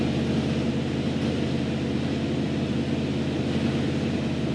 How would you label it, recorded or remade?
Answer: recorded